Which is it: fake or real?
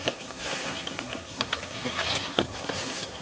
fake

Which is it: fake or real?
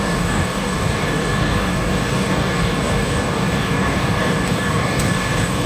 fake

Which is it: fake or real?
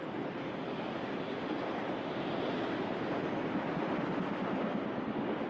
real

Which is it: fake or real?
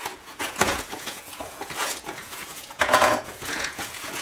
fake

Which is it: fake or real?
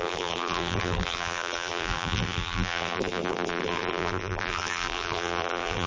fake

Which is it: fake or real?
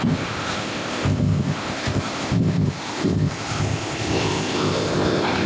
fake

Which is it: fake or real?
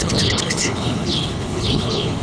fake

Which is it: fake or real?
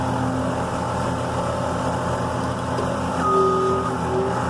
real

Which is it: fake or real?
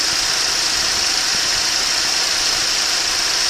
fake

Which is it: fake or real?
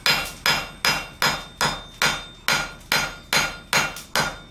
real